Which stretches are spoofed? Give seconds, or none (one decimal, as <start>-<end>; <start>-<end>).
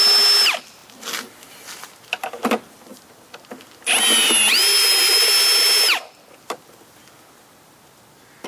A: none